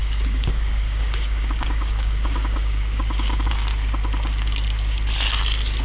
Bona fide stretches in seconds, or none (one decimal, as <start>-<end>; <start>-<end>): 3.5-5.8